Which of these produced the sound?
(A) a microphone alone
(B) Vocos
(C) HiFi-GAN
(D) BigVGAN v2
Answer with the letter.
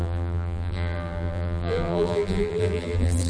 D